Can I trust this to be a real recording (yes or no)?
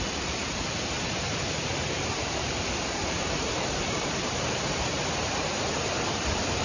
no